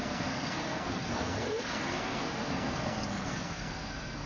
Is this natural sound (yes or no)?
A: no